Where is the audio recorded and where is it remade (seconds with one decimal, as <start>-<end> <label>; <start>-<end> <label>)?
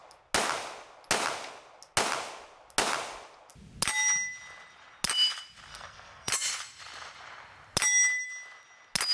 0.0-5.7 recorded; 5.7-6.3 remade; 6.3-9.1 recorded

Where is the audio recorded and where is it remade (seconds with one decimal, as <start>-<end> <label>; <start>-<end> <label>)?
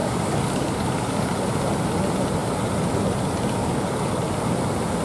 0.0-1.3 remade; 1.3-3.6 recorded; 3.6-4.2 remade; 4.2-5.0 recorded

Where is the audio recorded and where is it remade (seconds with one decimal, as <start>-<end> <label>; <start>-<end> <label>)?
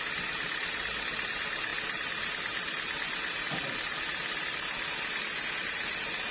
0.0-6.3 recorded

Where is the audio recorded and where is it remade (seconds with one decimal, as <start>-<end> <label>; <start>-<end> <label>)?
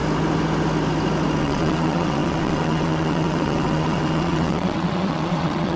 0.0-1.4 recorded; 1.4-5.8 remade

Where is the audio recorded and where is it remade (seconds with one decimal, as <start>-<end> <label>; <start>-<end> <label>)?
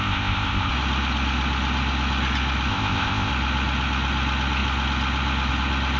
0.0-0.7 remade; 0.7-2.7 recorded; 2.7-3.3 remade; 3.3-6.0 recorded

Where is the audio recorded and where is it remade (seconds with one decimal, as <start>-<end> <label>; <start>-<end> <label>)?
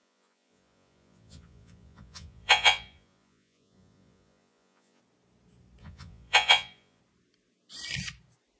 0.0-5.0 remade; 5.0-5.8 recorded; 5.8-7.0 remade; 7.0-8.6 recorded